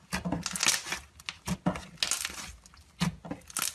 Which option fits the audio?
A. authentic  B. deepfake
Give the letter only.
A